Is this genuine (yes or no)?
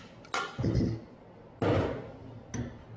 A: yes